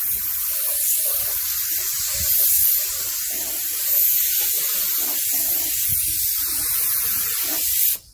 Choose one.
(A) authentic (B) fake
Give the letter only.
A